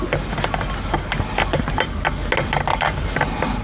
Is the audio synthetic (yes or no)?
no